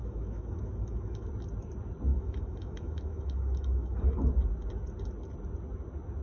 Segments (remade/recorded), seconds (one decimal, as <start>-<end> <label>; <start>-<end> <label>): 0.0-1.3 remade; 1.3-2.1 recorded; 2.1-4.3 remade; 4.3-6.2 recorded